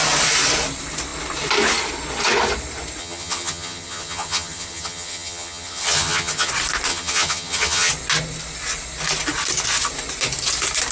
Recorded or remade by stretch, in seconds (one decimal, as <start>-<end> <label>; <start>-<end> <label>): 0.0-3.0 recorded; 3.0-6.5 remade; 6.5-6.9 recorded; 6.9-7.9 remade; 7.9-10.9 recorded